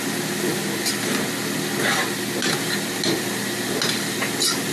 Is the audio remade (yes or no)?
no